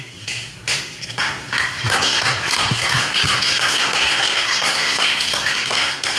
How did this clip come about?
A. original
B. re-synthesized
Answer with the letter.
B